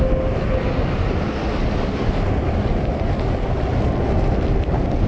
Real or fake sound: real